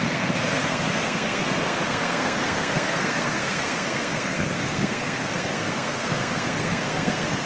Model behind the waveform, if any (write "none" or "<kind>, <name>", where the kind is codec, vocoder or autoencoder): codec, SNAC